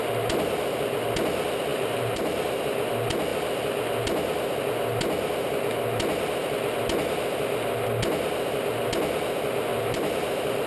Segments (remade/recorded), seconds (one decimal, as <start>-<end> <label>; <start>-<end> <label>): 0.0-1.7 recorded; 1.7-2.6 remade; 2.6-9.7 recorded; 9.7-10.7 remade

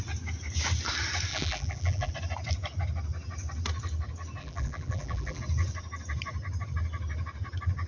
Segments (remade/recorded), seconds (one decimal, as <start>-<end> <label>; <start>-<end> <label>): 0.0-1.3 recorded; 1.3-2.1 remade; 2.1-4.4 recorded; 4.4-5.4 remade; 5.4-7.9 recorded

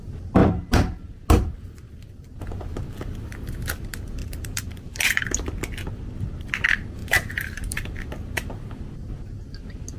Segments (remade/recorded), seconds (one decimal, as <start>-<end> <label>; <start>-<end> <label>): 0.0-4.2 recorded; 4.2-5.2 remade; 5.2-7.0 recorded; 7.0-8.1 remade; 8.1-10.0 recorded

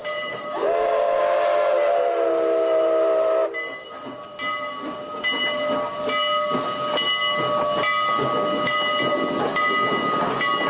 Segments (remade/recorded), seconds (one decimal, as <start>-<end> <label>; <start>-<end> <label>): 0.0-1.2 remade; 1.2-10.7 recorded

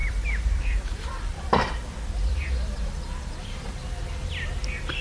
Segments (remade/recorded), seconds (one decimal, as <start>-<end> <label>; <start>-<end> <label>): 0.0-3.0 remade; 3.0-5.0 recorded

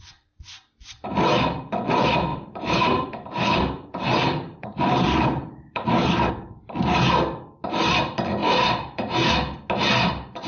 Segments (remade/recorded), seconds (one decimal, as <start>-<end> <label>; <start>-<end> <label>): 0.0-2.3 recorded; 2.3-6.3 remade; 6.3-8.4 recorded; 8.4-9.3 remade; 9.3-10.5 recorded

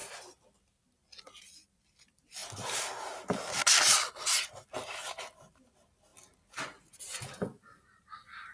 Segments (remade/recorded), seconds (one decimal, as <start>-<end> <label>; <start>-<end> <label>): 0.0-0.6 recorded; 0.6-2.4 remade; 2.4-5.5 recorded; 5.5-6.1 remade; 6.1-7.0 recorded; 7.0-8.5 remade